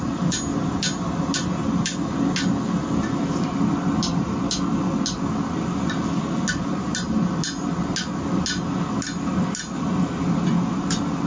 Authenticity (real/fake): real